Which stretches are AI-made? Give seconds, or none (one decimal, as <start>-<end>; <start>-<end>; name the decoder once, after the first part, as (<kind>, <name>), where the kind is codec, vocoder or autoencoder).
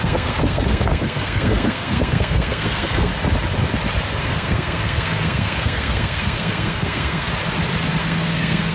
0.0-3.1 (codec, SNAC); 4.2-7.3; 8.0-8.7